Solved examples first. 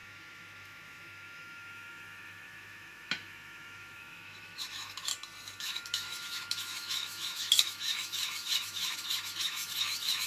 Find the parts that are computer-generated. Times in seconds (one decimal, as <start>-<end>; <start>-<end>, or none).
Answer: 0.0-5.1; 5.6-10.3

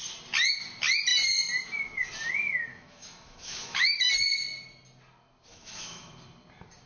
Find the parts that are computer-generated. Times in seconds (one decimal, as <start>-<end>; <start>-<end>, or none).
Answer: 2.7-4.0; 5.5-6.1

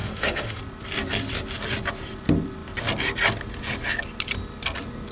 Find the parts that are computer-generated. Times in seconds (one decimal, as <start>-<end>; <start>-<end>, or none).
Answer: 0.0-0.6

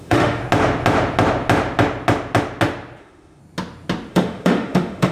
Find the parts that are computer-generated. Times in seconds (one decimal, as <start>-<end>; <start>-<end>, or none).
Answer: 0.0-0.4; 3.0-3.4; 4.1-5.1

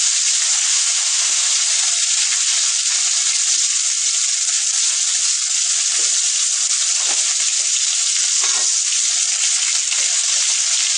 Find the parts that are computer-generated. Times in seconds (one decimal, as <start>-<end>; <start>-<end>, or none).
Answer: 0.7-1.5

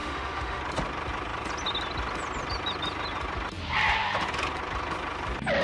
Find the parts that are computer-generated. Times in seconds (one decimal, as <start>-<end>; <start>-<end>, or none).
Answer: 0.0-0.6

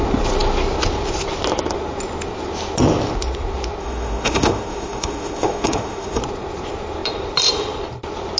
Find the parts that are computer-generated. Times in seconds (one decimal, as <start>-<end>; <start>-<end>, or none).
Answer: 3.8-6.2